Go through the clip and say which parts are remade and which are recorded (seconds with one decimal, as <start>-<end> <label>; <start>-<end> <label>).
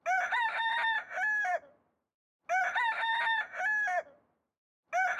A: 0.0-5.2 recorded